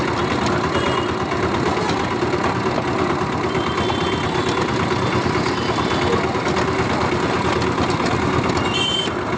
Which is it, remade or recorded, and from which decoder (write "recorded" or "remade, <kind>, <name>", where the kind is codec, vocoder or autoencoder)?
recorded